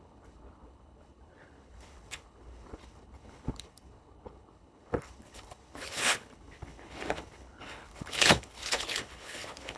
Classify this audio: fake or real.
fake